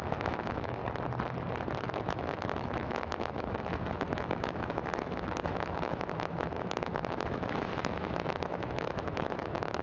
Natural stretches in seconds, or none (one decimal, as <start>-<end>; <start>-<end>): 0.8-1.8